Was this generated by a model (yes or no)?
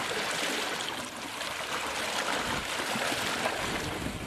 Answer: no